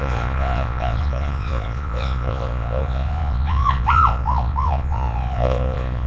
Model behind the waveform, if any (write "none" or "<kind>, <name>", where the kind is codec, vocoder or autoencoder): vocoder, Vocos